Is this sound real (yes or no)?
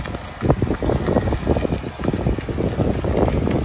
yes